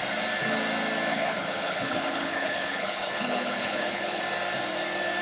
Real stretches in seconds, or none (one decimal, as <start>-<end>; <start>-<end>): 0.0-1.1; 4.2-5.2